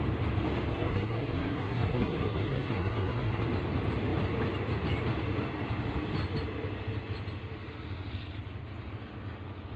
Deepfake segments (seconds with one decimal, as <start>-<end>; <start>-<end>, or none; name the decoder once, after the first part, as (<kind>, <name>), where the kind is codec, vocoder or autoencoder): 0.7-3.4 (codec, SNAC)